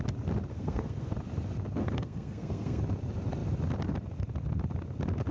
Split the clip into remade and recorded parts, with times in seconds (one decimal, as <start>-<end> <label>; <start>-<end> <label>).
0.0-0.5 recorded; 0.5-1.1 remade; 1.1-1.8 recorded; 1.8-2.8 remade; 2.8-5.3 recorded